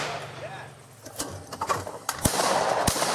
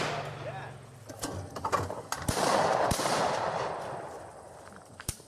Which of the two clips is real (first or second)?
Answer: second